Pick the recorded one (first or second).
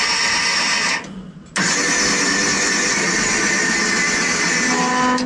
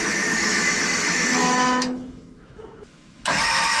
first